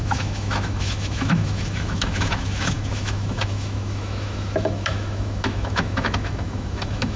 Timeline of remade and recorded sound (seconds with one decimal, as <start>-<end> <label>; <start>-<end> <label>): 0.0-7.2 remade